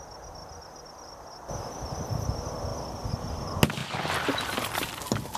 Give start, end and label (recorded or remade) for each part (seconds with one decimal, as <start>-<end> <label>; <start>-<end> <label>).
0.0-0.4 recorded; 0.4-2.2 remade; 2.2-2.7 recorded; 2.7-3.3 remade; 3.3-3.8 recorded; 3.8-5.4 remade